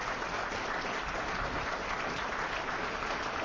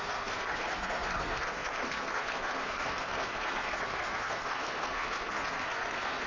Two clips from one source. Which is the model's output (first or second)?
second